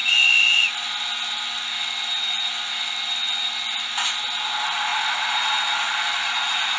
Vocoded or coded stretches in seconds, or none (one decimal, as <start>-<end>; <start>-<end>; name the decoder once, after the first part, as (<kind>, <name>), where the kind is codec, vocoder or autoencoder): none